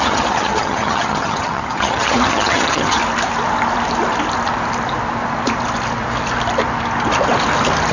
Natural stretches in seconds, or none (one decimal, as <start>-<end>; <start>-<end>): 3.0-7.9